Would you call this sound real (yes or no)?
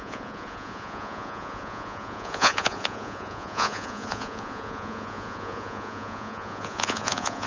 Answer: no